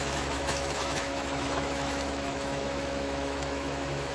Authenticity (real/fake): fake